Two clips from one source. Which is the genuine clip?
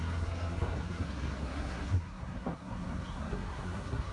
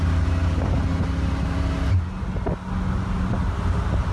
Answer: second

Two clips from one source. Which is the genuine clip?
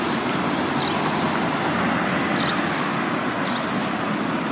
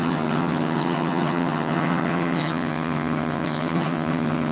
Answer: first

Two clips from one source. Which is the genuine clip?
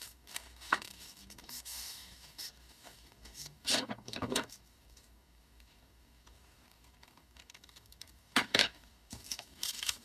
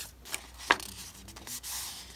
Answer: second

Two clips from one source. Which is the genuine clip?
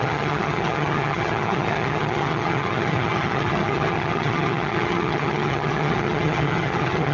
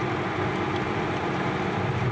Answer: second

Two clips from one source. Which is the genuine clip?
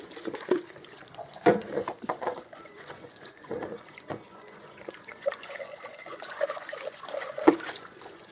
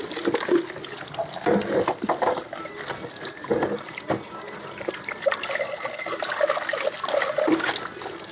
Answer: second